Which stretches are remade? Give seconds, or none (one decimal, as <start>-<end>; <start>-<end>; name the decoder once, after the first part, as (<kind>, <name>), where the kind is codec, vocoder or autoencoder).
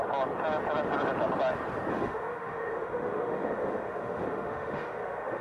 1.9-5.4 (autoencoder, DAC-VAE)